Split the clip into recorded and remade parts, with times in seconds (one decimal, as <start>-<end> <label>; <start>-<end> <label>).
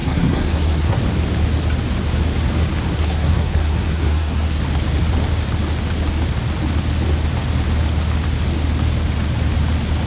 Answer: 0.0-1.0 remade; 1.0-2.9 recorded; 2.9-4.6 remade; 4.6-10.1 recorded